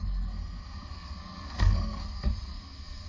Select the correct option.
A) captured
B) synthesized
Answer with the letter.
B